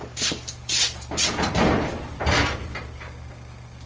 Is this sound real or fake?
real